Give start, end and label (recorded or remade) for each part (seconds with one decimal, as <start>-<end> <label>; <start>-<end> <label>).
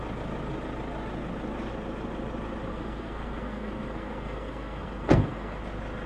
0.0-2.7 recorded; 2.7-5.6 remade; 5.6-6.1 recorded